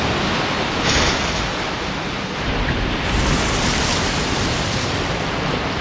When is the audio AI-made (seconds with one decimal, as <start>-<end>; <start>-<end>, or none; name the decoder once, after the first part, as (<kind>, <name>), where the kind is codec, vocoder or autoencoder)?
1.5-4.9 (vocoder, BigVGAN v2)